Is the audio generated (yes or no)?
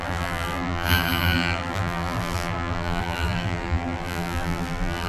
yes